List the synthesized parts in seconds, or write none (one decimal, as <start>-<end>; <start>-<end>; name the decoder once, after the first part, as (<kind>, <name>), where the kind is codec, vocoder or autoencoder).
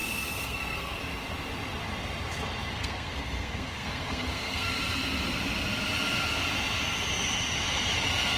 0.0-1.0 (codec, SNAC); 2.7-4.7